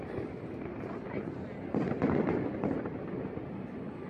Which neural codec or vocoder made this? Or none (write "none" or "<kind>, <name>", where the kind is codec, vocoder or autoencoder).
none